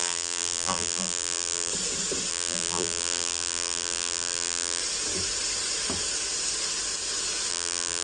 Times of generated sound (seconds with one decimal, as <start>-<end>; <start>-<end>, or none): 0.0-1.7; 2.3-4.8; 7.5-8.0